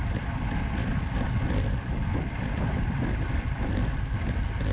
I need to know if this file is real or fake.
real